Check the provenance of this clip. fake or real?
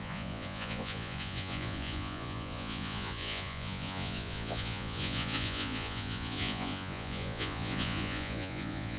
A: fake